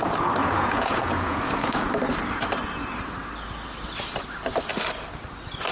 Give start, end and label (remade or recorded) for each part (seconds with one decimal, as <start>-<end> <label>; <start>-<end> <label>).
0.0-0.4 recorded; 0.4-1.9 remade; 1.9-5.7 recorded